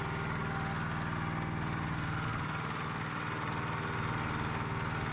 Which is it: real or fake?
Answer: real